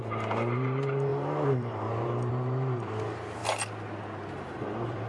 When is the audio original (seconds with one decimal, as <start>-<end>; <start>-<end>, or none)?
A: 3.4-4.3